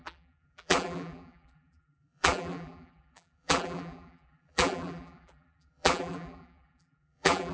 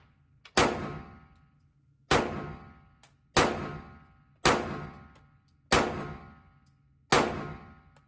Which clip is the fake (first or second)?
first